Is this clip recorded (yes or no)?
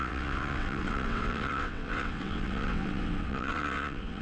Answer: no